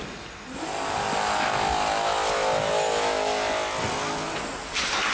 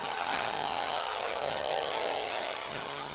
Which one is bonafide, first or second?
first